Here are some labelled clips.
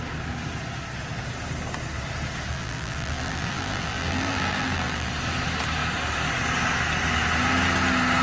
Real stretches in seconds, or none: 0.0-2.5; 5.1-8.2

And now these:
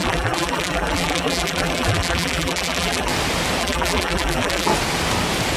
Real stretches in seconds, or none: 3.1-3.6; 4.7-5.6

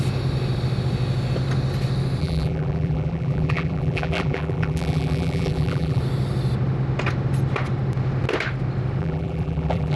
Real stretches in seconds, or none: 0.0-2.2; 6.0-9.0

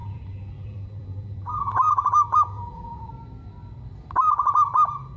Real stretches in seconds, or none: 3.1-5.2

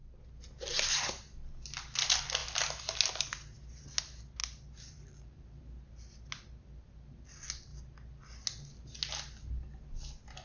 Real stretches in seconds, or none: 0.0-4.4; 5.6-10.4

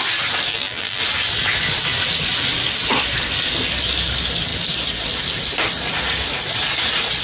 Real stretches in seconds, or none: 0.0-0.5; 1.0-7.2

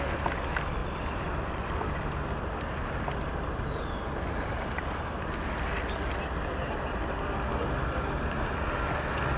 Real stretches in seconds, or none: 0.0-0.8; 2.0-9.4

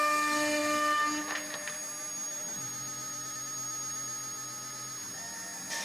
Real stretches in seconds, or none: 0.0-5.8